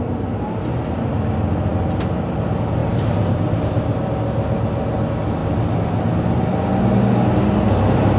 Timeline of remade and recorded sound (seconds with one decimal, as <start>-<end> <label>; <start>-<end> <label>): 0.0-2.8 recorded; 2.8-4.0 remade; 4.0-8.2 recorded